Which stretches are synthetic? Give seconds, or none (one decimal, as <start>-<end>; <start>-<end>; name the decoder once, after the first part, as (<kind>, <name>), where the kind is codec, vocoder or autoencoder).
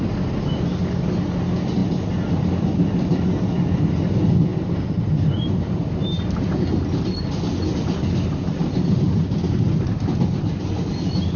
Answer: 4.5-6.6 (vocoder, BigVGAN v2)